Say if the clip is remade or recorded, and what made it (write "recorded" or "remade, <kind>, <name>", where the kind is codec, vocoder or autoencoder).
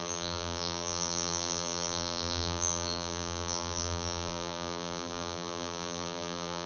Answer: remade, vocoder, BigVGAN v2